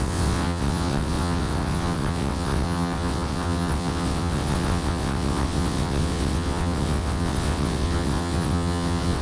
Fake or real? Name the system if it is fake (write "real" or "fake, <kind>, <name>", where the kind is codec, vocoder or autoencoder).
fake, vocoder, WaveNeXt